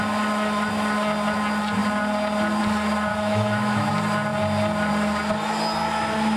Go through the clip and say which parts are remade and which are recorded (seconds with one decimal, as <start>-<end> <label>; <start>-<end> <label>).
0.0-3.1 recorded; 3.1-3.9 remade; 3.9-6.4 recorded